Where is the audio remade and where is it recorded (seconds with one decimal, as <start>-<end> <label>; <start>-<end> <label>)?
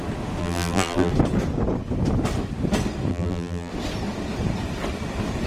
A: 0.0-0.4 recorded; 0.4-1.1 remade; 1.1-3.1 recorded; 3.1-3.7 remade; 3.7-5.5 recorded